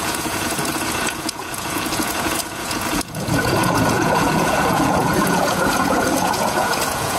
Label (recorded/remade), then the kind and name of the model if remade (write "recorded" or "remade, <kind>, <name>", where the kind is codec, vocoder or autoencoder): remade, vocoder, Vocos